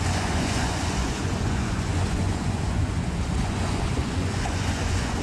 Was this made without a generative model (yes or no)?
no